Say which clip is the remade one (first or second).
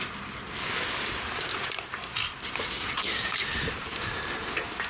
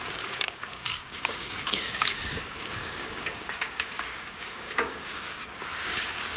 second